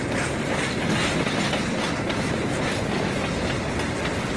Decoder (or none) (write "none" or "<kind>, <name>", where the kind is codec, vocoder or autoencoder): none